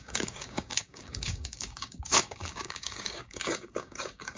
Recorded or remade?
remade